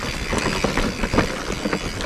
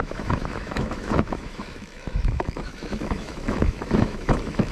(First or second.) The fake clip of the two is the second